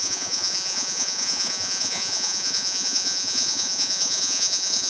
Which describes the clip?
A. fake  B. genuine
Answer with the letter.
A